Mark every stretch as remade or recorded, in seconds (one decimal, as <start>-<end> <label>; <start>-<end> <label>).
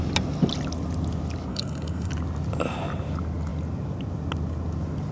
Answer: 0.0-1.5 recorded; 1.5-2.1 remade; 2.1-5.1 recorded